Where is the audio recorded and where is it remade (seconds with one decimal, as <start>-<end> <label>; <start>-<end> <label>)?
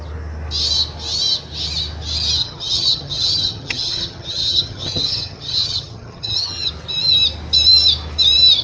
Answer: 0.0-2.4 recorded; 2.4-6.7 remade; 6.7-8.6 recorded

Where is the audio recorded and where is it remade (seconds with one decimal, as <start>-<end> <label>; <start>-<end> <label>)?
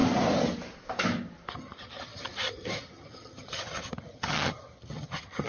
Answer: 0.0-1.5 recorded; 1.5-5.5 remade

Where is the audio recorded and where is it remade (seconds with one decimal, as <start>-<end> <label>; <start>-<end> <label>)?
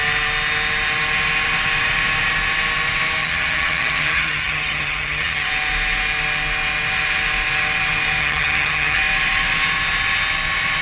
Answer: 0.0-3.2 recorded; 3.2-5.5 remade; 5.5-8.2 recorded; 8.2-9.0 remade; 9.0-10.8 recorded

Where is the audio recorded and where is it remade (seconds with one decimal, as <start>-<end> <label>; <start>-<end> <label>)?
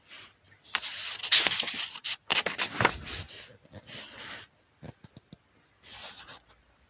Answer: 0.0-6.9 recorded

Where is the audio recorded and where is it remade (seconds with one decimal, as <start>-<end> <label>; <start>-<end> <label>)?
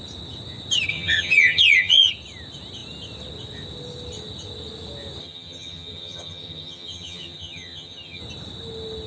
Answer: 0.0-0.9 recorded; 0.9-2.1 remade; 2.1-5.2 recorded; 5.2-8.2 remade; 8.2-9.1 recorded